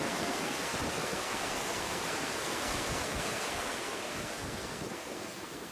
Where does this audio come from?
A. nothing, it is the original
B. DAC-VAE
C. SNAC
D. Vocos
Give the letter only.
C